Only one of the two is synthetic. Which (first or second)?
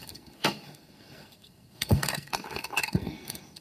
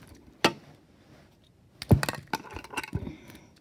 first